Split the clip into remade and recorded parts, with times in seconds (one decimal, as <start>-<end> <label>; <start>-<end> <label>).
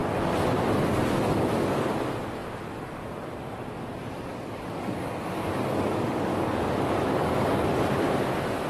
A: 0.0-4.3 recorded; 4.3-7.9 remade; 7.9-8.7 recorded